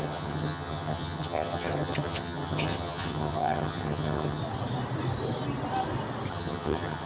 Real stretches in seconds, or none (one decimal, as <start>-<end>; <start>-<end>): 4.4-6.3